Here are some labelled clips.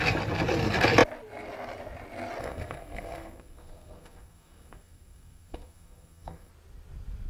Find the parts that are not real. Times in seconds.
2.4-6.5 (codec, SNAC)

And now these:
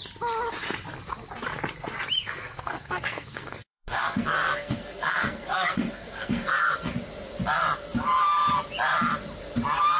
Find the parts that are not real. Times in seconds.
2.2-6.9 (codec, SNAC)

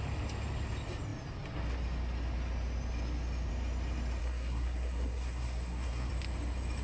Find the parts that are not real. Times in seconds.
4.2-6.1 (codec, SNAC)

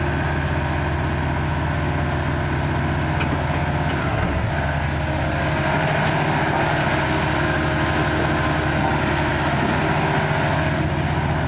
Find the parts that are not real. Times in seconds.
4.0-4.5 (codec, SNAC)

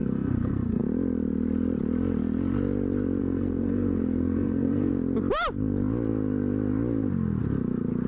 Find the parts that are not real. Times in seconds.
0.0-0.8 (codec, SNAC); 3.2-4.9

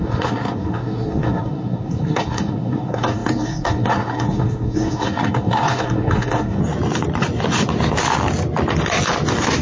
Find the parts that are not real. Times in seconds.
0.0-6.6 (codec, SNAC)

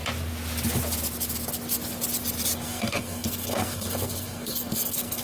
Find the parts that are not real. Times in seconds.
2.6-5.2 (codec, SNAC)